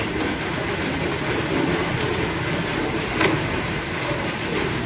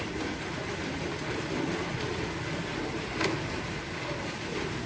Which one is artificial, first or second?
second